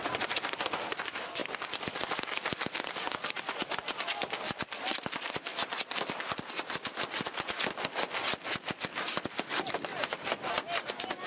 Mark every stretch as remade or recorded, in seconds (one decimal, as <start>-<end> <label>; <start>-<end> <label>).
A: 0.0-11.3 recorded